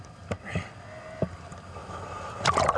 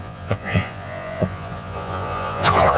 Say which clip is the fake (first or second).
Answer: second